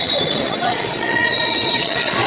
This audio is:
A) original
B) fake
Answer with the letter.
B